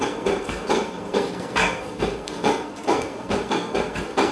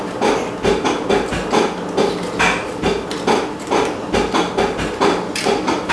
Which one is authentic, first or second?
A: second